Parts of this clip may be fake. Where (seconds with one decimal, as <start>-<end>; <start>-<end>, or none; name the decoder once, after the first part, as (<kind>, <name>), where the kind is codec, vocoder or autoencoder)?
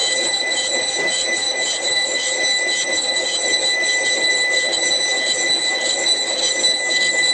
none